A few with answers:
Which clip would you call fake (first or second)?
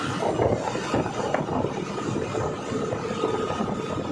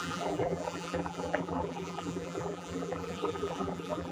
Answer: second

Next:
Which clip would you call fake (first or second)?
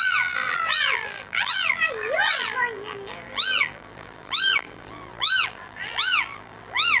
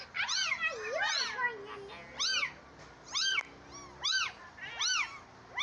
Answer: first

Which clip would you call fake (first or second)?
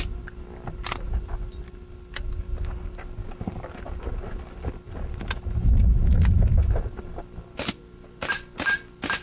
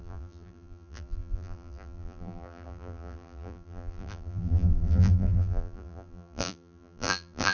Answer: second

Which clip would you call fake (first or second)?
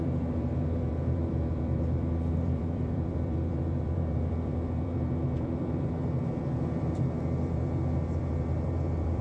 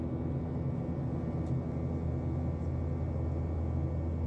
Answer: first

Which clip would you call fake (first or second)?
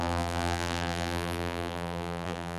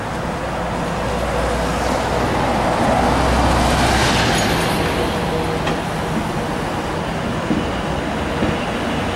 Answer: first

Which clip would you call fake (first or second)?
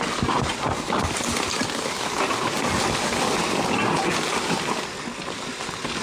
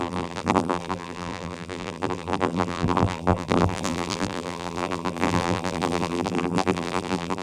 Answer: second